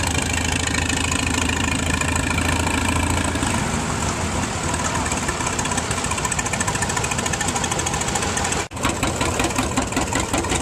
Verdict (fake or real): real